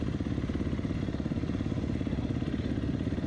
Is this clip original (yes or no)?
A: yes